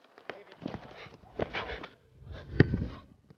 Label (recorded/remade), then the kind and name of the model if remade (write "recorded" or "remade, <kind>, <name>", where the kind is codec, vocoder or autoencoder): recorded